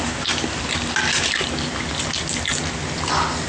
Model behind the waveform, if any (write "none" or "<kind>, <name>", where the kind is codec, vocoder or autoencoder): none